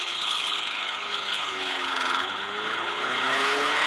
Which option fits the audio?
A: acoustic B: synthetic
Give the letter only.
B